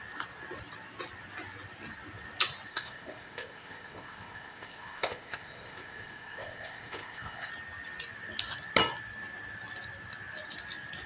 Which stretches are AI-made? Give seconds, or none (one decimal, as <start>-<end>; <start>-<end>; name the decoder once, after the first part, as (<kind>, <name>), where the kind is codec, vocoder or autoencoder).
2.7-7.5 (codec, ZipCodec)